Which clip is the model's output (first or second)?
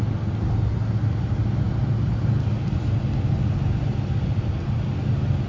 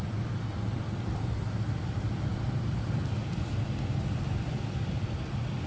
second